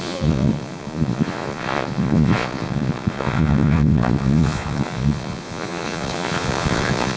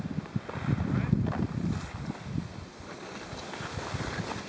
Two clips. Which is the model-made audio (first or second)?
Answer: first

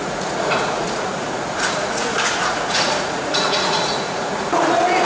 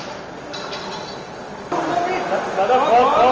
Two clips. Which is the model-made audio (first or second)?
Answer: first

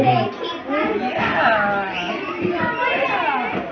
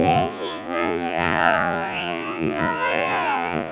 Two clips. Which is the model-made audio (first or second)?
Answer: second